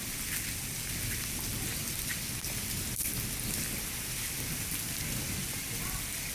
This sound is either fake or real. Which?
real